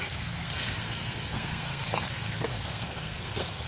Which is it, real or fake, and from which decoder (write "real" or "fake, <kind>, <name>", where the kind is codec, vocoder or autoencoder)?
fake, codec, SNAC